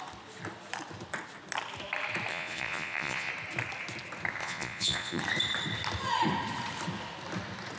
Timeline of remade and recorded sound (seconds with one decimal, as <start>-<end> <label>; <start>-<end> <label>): 0.0-2.3 recorded; 2.3-3.3 remade; 3.3-4.4 recorded; 4.4-5.2 remade; 5.2-7.8 recorded